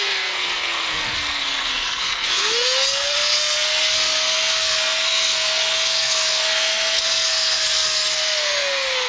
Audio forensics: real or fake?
fake